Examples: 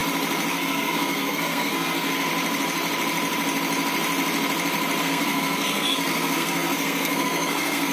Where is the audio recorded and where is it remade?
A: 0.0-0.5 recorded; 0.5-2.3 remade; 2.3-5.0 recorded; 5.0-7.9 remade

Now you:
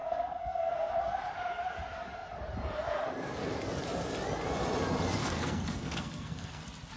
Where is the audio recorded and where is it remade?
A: 0.0-1.2 remade; 1.2-5.2 recorded; 5.2-6.6 remade; 6.6-7.0 recorded